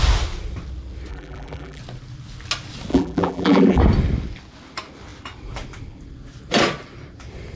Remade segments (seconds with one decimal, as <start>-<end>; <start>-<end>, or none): 1.1-1.8; 2.9-3.8